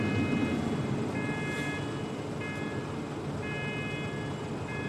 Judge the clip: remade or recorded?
recorded